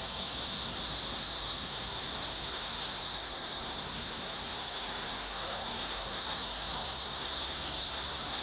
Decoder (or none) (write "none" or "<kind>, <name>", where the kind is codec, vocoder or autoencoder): codec, SNAC